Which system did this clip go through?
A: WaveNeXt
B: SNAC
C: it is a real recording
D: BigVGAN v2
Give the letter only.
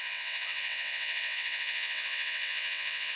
A